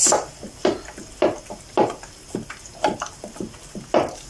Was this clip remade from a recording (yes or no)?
no